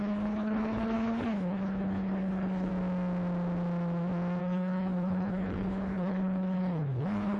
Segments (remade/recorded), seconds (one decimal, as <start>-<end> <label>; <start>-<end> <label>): 0.0-2.7 remade; 2.7-4.4 recorded; 4.4-7.4 remade